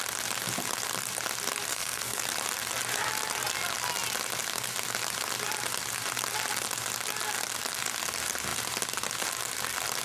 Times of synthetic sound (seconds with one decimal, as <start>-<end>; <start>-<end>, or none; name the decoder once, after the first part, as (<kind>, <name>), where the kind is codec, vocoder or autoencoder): 1.7-2.2 (codec, SNAC)

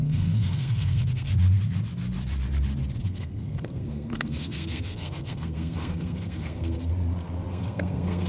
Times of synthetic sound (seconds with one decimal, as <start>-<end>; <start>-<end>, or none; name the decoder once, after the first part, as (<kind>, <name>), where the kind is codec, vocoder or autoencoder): 0.0-1.3 (codec, SNAC); 3.0-6.9; 7.5-8.3

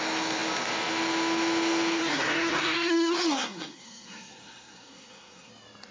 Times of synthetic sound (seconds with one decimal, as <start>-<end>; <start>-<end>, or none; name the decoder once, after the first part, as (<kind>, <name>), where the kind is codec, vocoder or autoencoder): 2.0-5.5 (codec, SNAC)

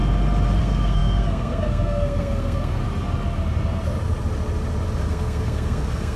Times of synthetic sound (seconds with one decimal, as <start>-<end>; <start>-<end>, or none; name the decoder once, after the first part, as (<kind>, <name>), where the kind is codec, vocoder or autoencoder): 0.6-2.8 (codec, SNAC); 5.1-6.2

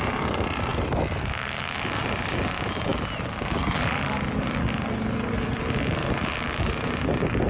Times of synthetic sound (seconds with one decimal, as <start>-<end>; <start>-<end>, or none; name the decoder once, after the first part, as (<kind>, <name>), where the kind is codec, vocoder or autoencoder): none

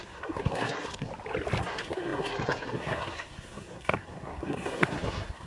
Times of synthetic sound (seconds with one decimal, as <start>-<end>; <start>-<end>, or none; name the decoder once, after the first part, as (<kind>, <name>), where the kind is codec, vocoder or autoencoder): 0.0-1.1 (codec, SNAC); 1.6-5.5